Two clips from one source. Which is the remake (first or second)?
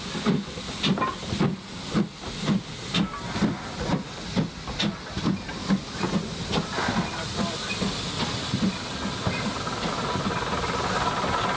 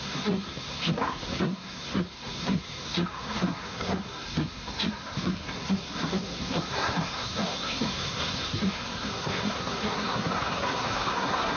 second